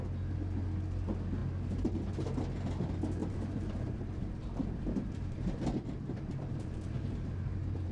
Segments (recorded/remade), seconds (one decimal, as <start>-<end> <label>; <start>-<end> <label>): 0.0-3.2 recorded; 3.2-7.9 remade